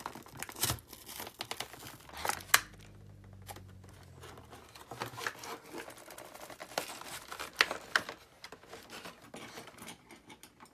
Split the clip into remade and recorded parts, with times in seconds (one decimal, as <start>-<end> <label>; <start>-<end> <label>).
0.0-10.7 recorded